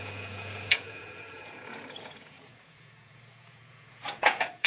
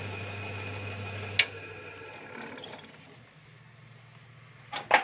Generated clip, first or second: first